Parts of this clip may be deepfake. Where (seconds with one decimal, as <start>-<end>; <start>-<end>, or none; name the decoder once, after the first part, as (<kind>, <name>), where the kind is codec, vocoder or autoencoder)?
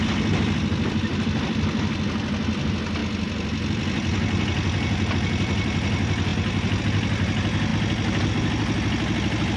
none